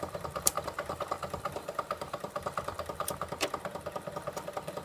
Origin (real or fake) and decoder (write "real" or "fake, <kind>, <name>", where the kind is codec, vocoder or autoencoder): fake, vocoder, BigVGAN v2